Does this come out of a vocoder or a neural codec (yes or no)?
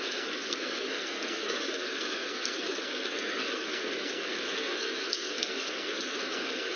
yes